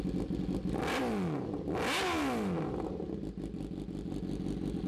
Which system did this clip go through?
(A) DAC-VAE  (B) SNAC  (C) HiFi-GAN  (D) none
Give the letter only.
D